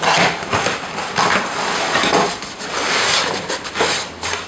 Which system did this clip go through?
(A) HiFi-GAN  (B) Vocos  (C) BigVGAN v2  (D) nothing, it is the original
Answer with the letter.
D